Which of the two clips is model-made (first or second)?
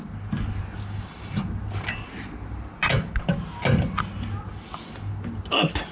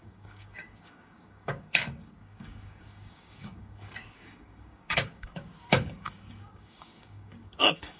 second